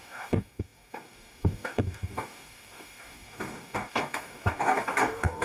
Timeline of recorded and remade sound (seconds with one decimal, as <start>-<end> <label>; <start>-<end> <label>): 0.0-5.4 remade